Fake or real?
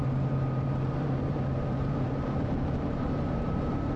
fake